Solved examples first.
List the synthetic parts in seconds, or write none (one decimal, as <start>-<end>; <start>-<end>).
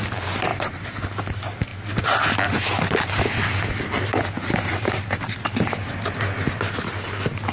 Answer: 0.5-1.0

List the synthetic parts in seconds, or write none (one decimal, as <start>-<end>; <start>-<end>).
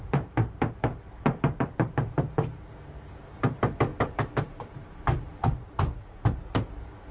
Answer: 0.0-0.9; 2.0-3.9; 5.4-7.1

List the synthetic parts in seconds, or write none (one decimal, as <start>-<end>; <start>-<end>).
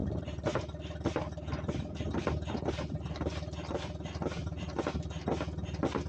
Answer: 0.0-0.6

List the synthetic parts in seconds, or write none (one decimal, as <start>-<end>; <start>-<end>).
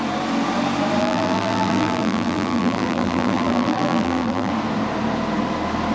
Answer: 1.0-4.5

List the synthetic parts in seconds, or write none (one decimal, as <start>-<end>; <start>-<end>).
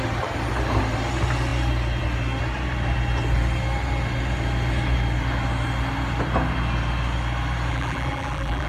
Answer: 7.7-8.7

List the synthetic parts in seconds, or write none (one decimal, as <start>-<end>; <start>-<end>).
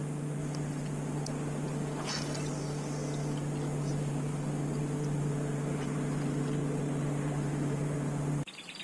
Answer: 0.0-0.4; 3.9-4.3; 4.8-8.8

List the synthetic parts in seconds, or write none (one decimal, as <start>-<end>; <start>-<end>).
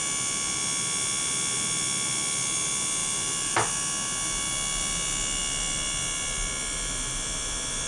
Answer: 3.0-3.5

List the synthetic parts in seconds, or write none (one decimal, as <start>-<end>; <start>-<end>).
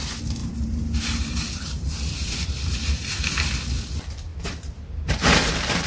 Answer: 0.4-3.2; 4.3-5.5